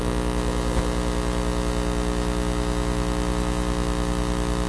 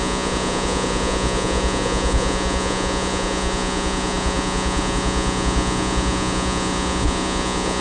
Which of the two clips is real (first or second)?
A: first